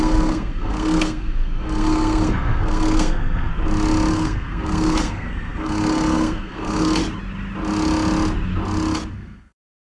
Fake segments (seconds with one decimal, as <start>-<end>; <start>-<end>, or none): 0.0-3.5; 4.1-7.0; 9.1-10.0

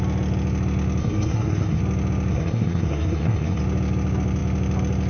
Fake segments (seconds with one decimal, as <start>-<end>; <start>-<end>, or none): 1.0-1.8; 2.3-3.6